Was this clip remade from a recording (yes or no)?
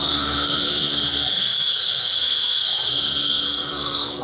yes